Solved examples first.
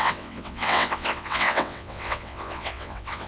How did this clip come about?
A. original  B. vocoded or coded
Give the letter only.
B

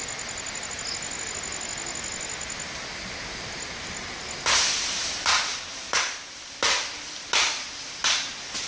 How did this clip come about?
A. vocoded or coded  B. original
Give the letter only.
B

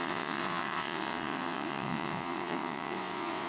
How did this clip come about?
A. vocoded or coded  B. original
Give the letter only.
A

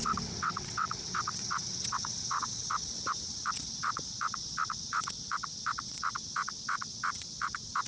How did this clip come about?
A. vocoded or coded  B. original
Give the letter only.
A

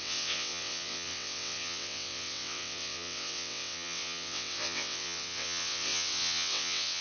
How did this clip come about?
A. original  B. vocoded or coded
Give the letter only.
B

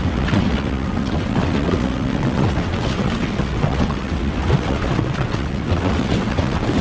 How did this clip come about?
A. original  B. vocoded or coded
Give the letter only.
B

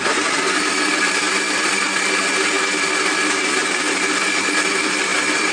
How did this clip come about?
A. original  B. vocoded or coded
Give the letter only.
A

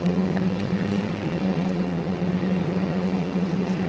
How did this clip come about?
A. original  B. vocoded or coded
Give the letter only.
B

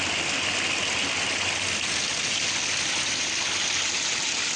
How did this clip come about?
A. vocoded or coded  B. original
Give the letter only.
B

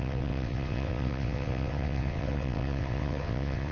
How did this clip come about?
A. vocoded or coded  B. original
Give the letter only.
A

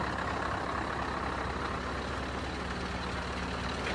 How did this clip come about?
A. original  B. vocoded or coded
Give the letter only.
A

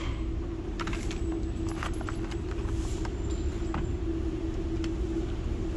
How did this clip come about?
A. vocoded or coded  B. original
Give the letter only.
B